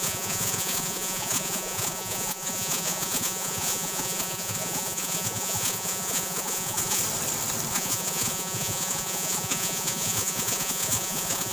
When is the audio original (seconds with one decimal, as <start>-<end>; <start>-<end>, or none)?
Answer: 7.0-7.7